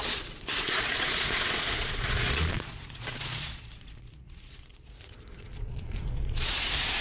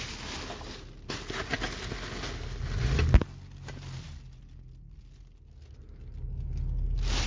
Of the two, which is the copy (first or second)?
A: first